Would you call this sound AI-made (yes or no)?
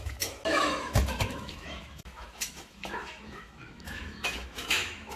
yes